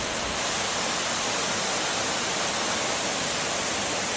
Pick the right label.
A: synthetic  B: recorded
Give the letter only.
B